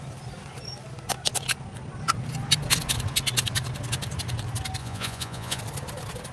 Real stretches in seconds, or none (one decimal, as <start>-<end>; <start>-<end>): 0.0-4.8; 5.6-6.3